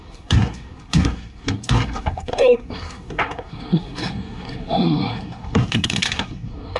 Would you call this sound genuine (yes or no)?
no